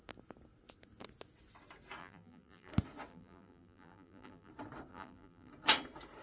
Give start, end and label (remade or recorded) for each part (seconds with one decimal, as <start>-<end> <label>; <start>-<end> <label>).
0.0-2.0 recorded; 2.0-2.7 remade; 2.7-3.1 recorded; 3.1-4.5 remade; 4.5-4.9 recorded; 4.9-5.5 remade; 5.5-6.2 recorded